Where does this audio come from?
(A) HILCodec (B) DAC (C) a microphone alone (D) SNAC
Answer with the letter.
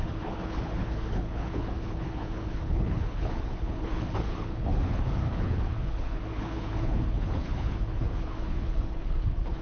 A